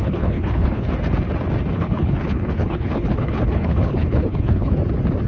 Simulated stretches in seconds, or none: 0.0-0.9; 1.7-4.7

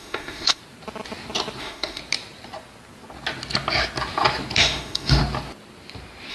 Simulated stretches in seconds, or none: 0.0-0.6; 1.6-2.0; 4.6-5.2

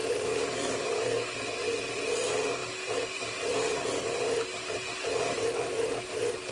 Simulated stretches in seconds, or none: 2.6-5.7

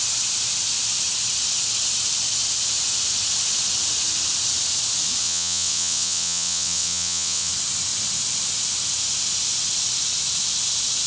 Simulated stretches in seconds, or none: 5.2-7.5

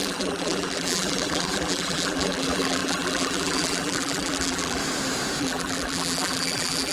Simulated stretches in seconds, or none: 0.0-4.8; 5.4-6.9

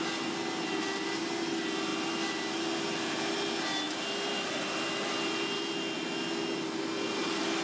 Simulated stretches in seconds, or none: none

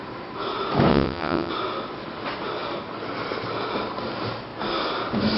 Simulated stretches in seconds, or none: 0.9-1.5

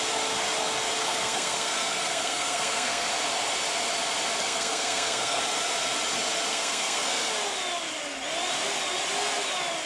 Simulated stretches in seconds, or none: 1.0-3.1; 4.4-5.4; 6.5-7.3